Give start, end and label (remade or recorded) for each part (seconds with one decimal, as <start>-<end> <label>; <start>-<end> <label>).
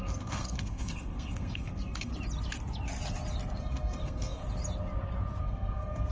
0.0-2.1 remade; 2.1-3.6 recorded; 3.6-4.4 remade; 4.4-5.4 recorded; 5.4-6.1 remade